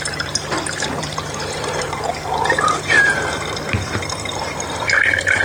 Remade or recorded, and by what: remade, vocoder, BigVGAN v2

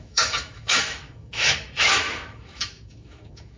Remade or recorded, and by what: remade, autoencoder, DAC-VAE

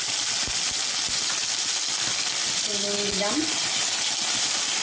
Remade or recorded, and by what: recorded